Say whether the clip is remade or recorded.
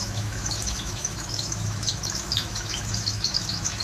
remade